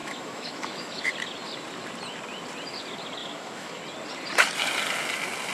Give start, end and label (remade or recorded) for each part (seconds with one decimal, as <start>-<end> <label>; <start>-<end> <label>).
0.0-1.1 remade; 1.1-3.2 recorded; 3.2-3.8 remade; 3.8-5.5 recorded